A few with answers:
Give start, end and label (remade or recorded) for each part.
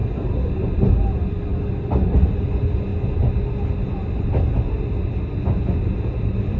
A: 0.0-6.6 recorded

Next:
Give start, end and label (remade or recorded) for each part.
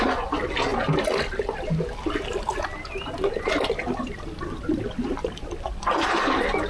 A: 0.0-6.7 recorded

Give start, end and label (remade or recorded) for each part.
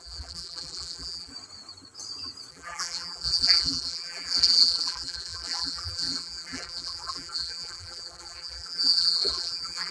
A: 0.0-1.3 remade; 1.3-2.5 recorded; 2.5-9.9 remade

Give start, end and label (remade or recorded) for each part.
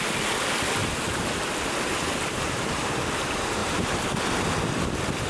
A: 0.0-0.8 recorded; 0.8-2.9 remade; 2.9-3.6 recorded; 3.6-4.2 remade; 4.2-5.3 recorded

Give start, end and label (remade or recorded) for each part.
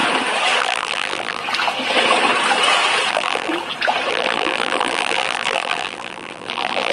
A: 0.0-0.6 recorded; 0.6-1.4 remade; 1.4-3.1 recorded; 3.1-3.5 remade; 3.5-4.1 recorded; 4.1-6.9 remade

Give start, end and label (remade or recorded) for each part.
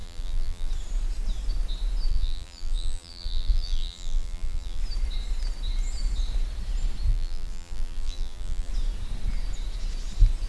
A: 0.0-0.7 remade; 0.7-2.1 recorded; 2.1-4.8 remade; 4.8-7.1 recorded; 7.1-8.7 remade; 8.7-10.5 recorded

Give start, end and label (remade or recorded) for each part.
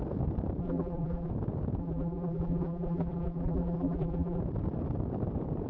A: 0.0-0.6 recorded; 0.6-1.3 remade; 1.3-1.8 recorded; 1.8-4.4 remade; 4.4-5.7 recorded